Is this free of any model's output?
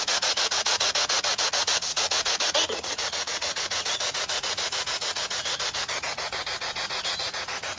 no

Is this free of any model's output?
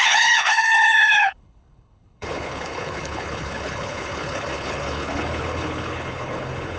no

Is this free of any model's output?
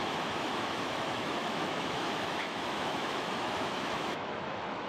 no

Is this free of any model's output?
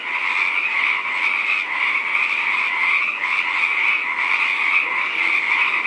yes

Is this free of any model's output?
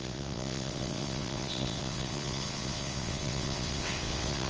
no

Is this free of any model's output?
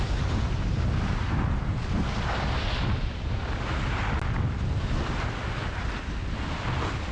yes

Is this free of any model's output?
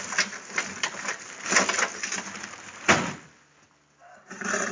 yes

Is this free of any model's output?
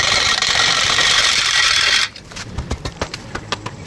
no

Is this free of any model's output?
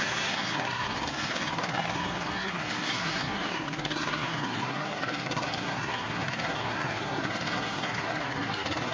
no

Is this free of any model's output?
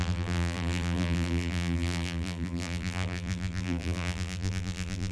no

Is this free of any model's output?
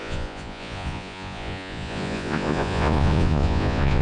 no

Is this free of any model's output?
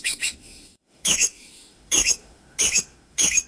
no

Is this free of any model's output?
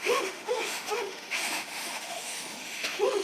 no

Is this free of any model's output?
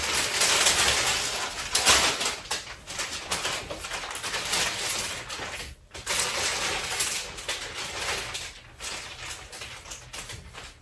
yes